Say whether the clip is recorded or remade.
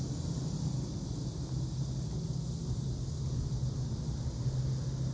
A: recorded